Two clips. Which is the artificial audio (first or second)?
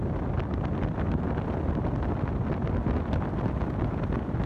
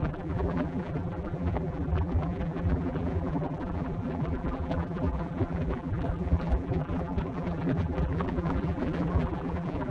second